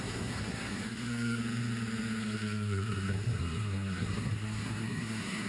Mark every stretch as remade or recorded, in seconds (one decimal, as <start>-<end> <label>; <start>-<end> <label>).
0.0-1.4 remade; 1.4-2.2 recorded; 2.2-5.5 remade